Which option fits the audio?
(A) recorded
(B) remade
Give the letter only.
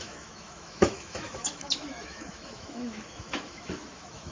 B